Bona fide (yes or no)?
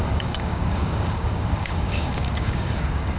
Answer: no